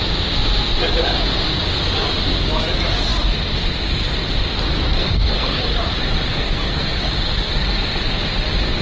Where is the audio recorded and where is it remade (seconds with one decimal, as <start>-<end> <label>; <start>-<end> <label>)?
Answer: 0.0-5.0 recorded; 5.0-5.6 remade; 5.6-6.3 recorded; 6.3-7.1 remade; 7.1-8.8 recorded

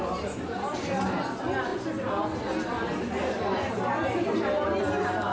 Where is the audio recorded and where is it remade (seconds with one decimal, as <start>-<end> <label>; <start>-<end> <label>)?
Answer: 0.0-5.3 recorded

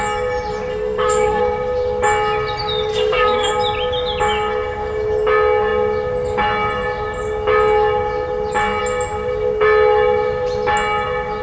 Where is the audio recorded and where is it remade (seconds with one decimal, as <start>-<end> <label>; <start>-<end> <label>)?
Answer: 0.0-0.7 recorded; 0.7-1.4 remade; 1.4-2.9 recorded; 2.9-3.5 remade; 3.5-11.4 recorded

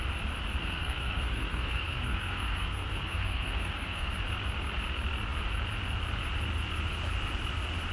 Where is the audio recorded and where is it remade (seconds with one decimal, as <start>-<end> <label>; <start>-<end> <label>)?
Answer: 0.0-0.6 recorded; 0.6-4.1 remade; 4.1-7.9 recorded

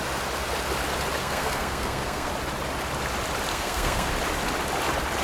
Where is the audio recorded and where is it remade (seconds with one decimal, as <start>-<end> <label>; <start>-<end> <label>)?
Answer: 0.0-1.2 recorded; 1.2-2.3 remade; 2.3-3.5 recorded; 3.5-4.1 remade; 4.1-5.2 recorded